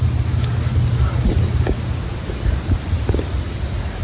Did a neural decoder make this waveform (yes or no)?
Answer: no